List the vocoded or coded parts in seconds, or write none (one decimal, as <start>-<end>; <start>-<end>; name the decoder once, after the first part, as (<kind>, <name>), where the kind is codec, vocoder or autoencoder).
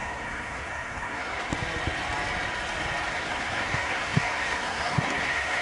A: 0.0-1.5 (codec, SNAC); 3.1-5.6